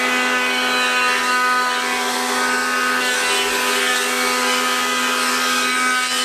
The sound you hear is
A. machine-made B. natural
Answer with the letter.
A